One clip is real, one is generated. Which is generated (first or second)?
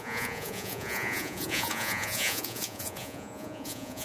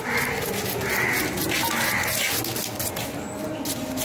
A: first